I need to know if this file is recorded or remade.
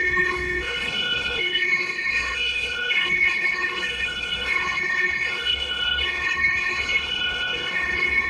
remade